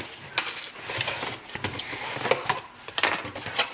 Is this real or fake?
real